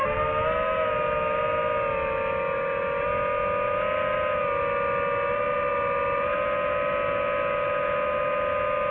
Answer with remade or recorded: recorded